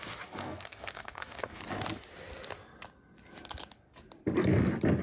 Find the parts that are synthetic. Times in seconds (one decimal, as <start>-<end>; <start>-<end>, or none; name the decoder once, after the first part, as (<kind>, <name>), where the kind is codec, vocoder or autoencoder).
0.4-1.6 (codec, SNAC)